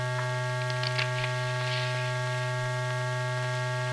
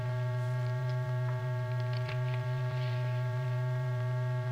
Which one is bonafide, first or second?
first